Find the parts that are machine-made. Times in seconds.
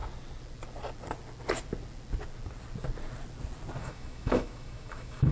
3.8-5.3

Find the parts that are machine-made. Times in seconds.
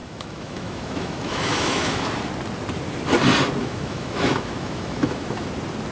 0.0-2.1; 3.6-5.5